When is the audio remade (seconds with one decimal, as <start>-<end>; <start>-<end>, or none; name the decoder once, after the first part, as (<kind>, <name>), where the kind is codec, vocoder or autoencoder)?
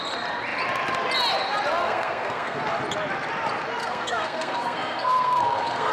1.8-2.6 (codec, SNAC); 3.8-5.9